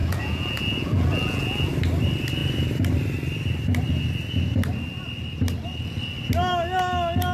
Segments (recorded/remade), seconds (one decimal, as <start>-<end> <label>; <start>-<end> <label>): 0.0-1.7 remade; 1.7-7.3 recorded